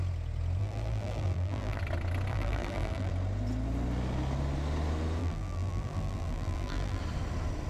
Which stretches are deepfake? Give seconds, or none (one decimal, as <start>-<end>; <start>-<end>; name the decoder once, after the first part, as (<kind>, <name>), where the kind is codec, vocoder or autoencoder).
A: 0.6-1.8 (vocoder, BigVGAN v2); 2.3-3.1; 5.2-7.0

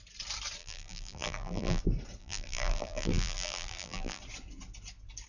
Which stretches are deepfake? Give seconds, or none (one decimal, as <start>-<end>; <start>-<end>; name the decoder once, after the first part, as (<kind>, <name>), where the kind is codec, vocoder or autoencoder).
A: 0.6-1.8 (vocoder, BigVGAN v2); 2.2-4.2

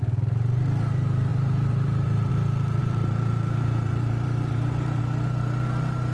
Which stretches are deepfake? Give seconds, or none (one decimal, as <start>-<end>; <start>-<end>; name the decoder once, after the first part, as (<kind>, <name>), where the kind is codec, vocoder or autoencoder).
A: 1.3-2.3 (vocoder, BigVGAN v2); 2.8-5.0

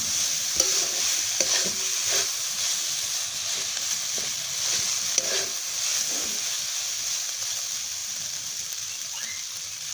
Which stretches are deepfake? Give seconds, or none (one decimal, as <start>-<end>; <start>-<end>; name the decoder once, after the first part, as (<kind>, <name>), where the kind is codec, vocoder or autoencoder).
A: 8.0-9.0 (vocoder, BigVGAN v2)

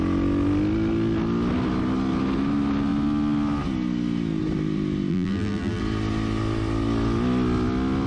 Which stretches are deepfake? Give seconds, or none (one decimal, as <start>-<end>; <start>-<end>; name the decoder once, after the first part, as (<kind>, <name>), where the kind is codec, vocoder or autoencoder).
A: 5.1-5.8 (vocoder, BigVGAN v2)